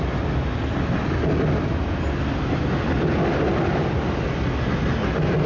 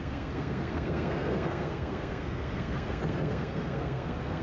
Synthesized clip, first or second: second